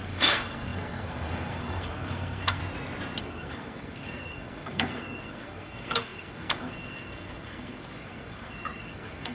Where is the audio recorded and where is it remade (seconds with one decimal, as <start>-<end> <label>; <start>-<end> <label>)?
0.0-2.6 remade; 2.6-3.2 recorded; 3.2-9.3 remade